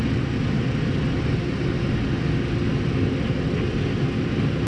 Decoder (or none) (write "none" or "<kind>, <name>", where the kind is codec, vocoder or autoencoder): none